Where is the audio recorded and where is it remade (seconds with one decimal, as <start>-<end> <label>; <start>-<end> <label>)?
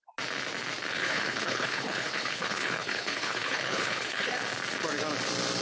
0.0-0.9 recorded; 0.9-4.3 remade; 4.3-5.6 recorded